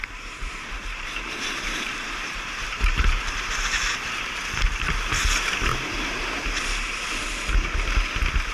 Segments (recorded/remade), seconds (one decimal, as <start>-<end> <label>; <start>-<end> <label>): 0.0-4.3 remade; 4.3-5.7 recorded; 5.7-6.4 remade; 6.4-8.5 recorded